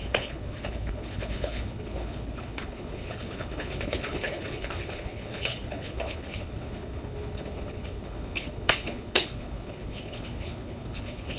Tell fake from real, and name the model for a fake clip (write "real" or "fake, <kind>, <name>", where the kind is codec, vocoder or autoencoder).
fake, codec, HILCodec